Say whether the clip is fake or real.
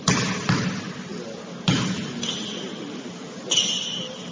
real